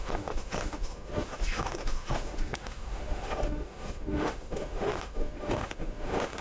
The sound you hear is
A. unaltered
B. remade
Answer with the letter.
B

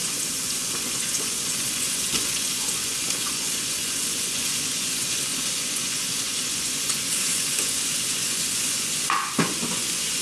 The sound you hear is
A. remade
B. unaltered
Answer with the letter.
A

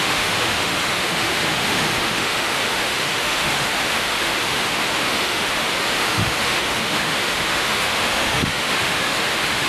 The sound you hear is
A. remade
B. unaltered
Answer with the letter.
A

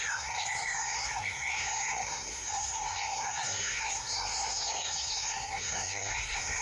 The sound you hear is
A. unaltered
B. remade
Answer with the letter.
B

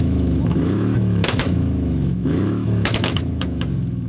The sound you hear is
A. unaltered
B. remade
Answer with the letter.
B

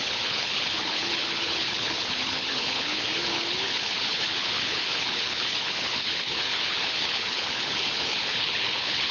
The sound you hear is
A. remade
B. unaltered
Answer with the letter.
A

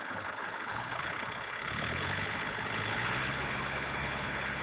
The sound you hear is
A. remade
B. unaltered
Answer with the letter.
A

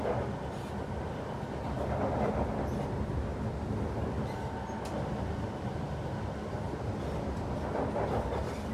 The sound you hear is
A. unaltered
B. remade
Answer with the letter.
A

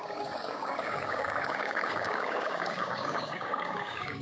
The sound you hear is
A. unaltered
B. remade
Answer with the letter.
B